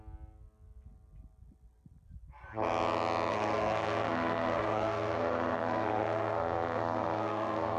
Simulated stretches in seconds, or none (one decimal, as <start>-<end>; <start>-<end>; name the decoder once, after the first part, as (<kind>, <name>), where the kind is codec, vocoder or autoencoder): 3.3-7.8 (codec, SNAC)